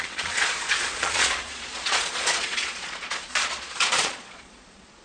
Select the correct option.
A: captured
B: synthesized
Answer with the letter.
B